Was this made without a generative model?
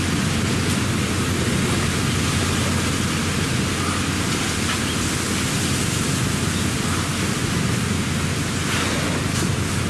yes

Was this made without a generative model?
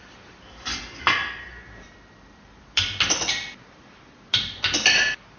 no